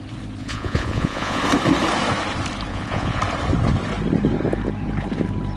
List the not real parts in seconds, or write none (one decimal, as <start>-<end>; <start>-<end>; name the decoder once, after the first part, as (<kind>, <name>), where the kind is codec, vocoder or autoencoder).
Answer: 0.4-1.4 (vocoder, Vocos); 2.7-3.2